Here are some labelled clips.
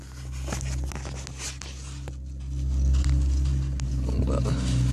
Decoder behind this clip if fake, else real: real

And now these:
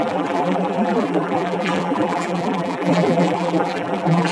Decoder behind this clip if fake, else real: fake, vocoder, BigVGAN v2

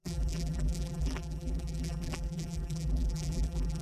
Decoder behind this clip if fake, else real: fake, vocoder, BigVGAN v2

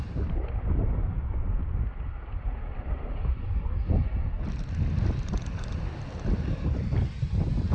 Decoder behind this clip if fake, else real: real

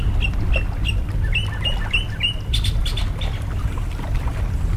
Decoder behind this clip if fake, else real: real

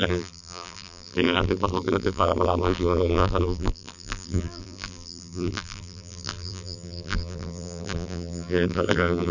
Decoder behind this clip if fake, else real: fake, vocoder, BigVGAN v2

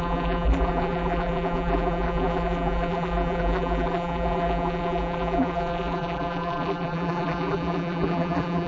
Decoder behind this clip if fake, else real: fake, vocoder, BigVGAN v2